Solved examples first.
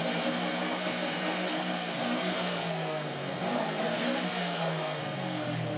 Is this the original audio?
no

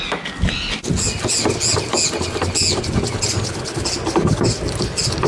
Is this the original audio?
yes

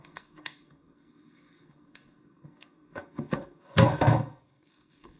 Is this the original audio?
no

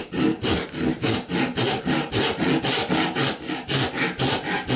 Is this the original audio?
yes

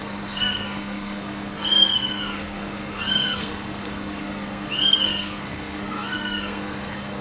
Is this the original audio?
no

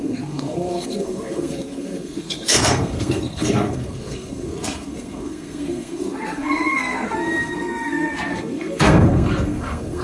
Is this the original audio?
no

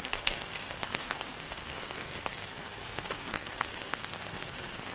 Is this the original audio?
no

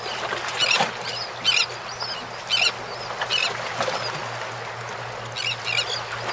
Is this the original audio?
yes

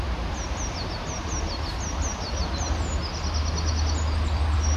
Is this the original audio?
yes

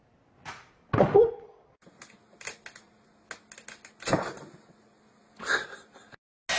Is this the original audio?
yes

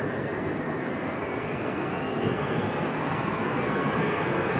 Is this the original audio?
no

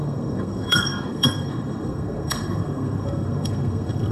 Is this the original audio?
no